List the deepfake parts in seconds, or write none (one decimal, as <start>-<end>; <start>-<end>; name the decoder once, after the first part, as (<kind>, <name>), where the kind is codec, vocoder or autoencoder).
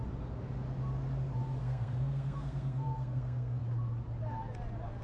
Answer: 1.6-3.6 (codec, SNAC)